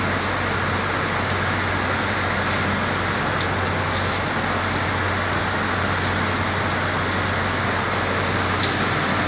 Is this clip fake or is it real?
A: real